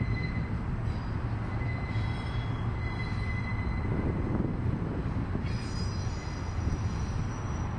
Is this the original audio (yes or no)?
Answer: yes